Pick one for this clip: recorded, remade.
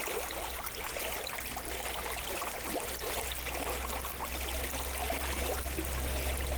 recorded